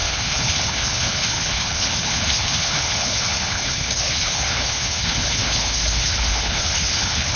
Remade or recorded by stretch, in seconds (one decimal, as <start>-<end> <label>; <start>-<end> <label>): 0.0-7.4 remade